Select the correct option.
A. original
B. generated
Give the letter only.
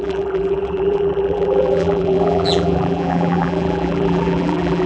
B